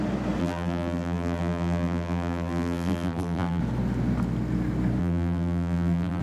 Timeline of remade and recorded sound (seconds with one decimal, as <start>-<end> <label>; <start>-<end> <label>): 0.0-0.4 recorded; 0.4-3.6 remade; 3.6-5.0 recorded; 5.0-6.2 remade